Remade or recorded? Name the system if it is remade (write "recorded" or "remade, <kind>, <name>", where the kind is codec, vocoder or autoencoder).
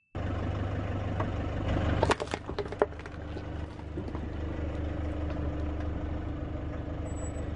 recorded